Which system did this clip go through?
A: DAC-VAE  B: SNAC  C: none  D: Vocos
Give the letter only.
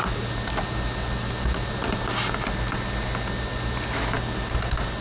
C